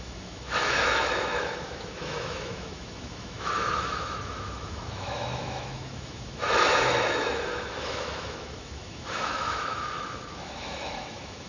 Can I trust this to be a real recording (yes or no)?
no